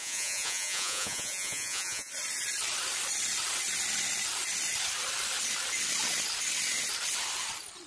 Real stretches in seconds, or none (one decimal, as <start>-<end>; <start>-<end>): 2.1-7.9